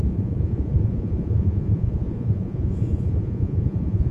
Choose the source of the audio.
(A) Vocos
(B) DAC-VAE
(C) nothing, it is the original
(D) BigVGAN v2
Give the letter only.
A